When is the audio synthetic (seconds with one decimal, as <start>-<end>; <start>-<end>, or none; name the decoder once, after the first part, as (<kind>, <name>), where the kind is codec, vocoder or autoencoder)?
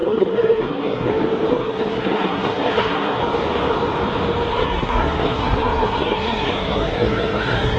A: 0.0-1.1 (codec, SNAC); 1.5-3.2; 4.5-7.8